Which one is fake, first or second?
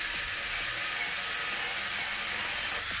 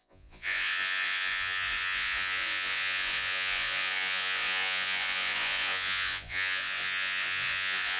second